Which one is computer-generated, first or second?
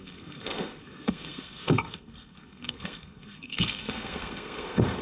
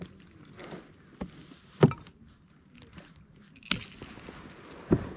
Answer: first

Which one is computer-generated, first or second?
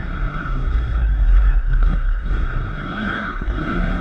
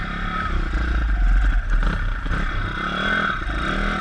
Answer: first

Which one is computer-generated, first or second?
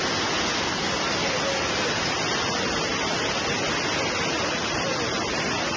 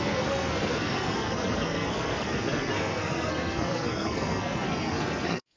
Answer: second